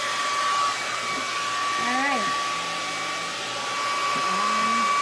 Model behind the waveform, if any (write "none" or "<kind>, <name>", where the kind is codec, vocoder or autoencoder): none